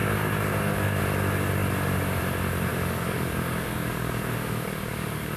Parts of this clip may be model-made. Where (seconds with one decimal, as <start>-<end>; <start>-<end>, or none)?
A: 0.0-1.0; 2.7-5.4